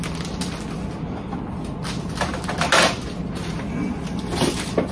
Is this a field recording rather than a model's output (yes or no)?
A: yes